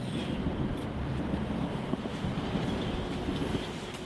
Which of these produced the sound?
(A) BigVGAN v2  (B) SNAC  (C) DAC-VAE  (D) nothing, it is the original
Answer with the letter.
A